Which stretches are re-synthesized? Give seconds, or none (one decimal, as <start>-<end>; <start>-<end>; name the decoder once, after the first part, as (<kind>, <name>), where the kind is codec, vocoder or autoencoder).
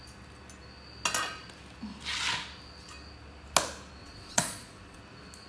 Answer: 4.0-5.0 (vocoder, Vocos)